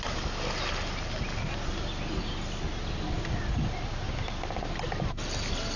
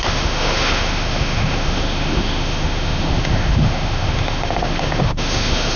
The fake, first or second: second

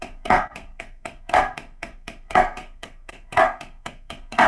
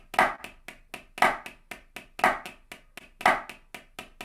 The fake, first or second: first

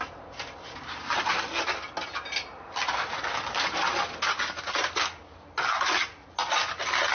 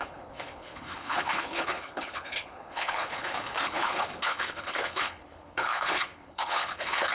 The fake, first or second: second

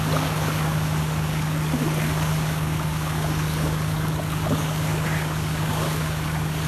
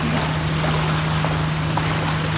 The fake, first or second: first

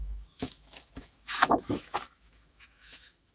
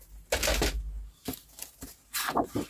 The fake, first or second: first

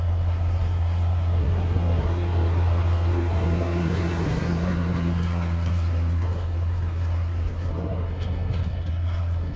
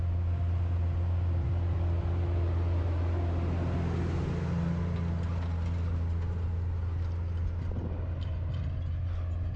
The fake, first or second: first